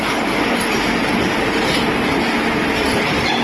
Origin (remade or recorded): recorded